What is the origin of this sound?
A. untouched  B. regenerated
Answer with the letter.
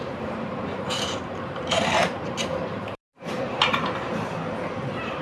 B